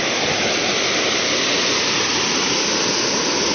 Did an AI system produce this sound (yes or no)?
no